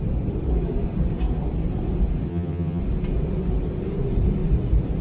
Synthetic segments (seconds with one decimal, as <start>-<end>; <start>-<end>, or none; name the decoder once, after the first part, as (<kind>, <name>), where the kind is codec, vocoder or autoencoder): 2.3-2.8 (vocoder, HiFi-GAN)